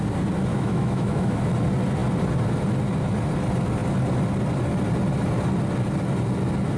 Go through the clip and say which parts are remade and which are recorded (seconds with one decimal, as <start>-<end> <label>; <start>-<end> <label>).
0.0-0.5 recorded; 0.5-1.4 remade; 1.4-6.8 recorded